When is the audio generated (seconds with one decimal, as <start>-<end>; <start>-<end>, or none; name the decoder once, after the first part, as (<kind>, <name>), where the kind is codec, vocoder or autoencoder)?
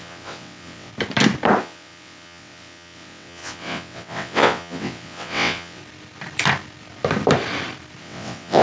0.0-0.9 (vocoder, WaveNeXt); 1.6-5.8; 8.0-8.6